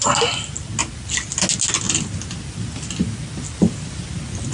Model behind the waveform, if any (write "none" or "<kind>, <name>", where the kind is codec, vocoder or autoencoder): none